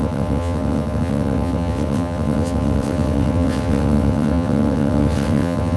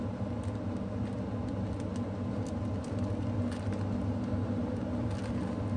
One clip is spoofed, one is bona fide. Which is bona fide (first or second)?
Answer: second